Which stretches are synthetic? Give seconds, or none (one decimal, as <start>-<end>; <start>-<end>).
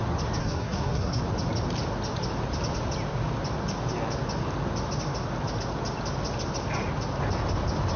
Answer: 0.4-1.2